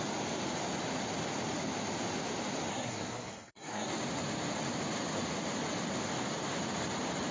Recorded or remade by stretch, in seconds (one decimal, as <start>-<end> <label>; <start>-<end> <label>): 0.0-2.7 recorded; 2.7-3.9 remade; 3.9-7.3 recorded